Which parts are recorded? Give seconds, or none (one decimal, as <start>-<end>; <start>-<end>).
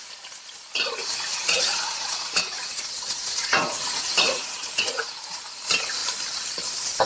0.0-1.3; 5.4-7.1